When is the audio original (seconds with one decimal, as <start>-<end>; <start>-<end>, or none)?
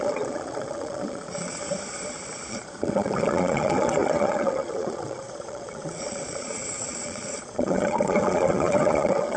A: 1.6-2.5